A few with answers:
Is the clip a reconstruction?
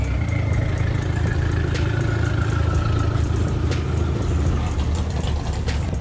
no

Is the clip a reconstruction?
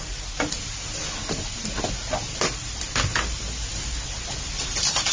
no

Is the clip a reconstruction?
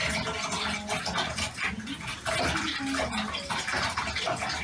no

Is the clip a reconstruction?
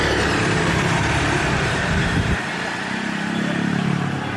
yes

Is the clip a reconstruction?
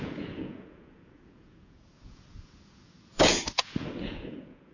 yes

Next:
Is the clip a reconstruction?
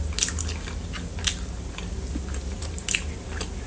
no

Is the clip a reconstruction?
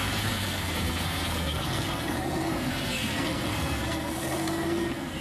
yes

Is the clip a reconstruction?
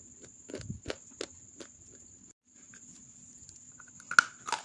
no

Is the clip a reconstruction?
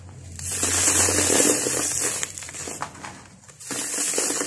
no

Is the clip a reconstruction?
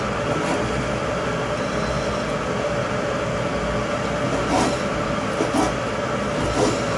no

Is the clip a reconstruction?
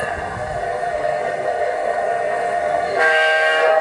yes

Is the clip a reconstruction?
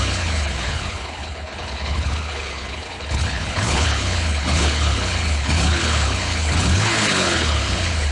yes